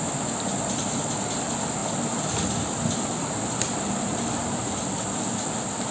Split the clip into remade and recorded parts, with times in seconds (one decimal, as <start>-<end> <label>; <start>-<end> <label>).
0.0-5.9 recorded